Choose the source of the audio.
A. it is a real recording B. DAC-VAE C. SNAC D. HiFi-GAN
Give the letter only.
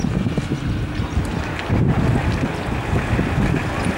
A